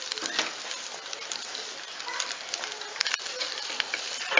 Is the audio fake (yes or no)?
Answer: no